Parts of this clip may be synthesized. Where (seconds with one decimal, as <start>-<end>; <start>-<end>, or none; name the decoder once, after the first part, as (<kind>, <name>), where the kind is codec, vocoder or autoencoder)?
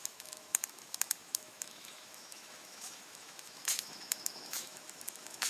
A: 0.0-5.5 (autoencoder, DAC-VAE)